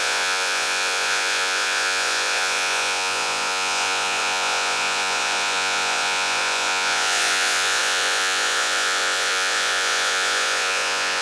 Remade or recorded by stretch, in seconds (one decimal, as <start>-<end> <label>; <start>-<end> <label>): 0.0-11.2 remade